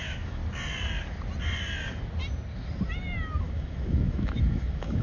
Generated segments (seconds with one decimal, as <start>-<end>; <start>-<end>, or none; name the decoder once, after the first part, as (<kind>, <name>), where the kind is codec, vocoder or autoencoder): 0.0-0.4 (autoencoder, DAC-VAE); 3.4-5.0